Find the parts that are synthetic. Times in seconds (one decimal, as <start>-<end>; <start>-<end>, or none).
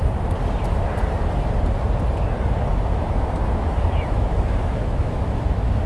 2.7-5.9